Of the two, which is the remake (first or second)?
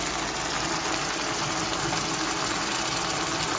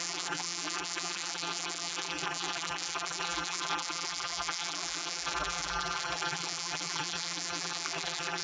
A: second